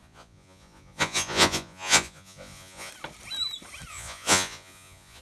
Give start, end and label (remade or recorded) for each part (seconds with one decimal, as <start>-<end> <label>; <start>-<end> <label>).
0.0-2.9 remade; 2.9-3.9 recorded; 3.9-5.2 remade